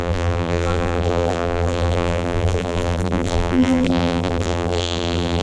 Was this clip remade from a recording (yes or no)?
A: yes